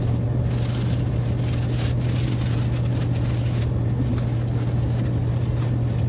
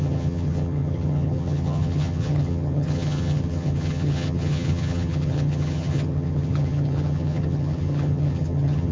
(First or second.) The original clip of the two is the first